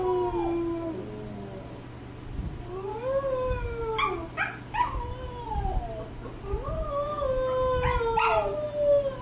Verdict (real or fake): real